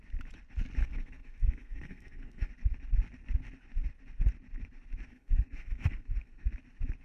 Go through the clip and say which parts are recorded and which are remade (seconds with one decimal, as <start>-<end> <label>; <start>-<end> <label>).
0.0-0.8 recorded; 0.8-2.5 remade; 2.5-5.1 recorded; 5.1-6.5 remade; 6.5-7.0 recorded